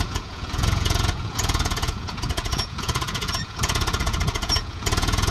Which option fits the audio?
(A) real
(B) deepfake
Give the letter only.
B